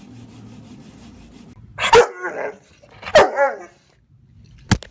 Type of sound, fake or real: real